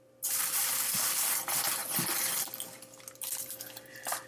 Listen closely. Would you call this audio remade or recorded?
recorded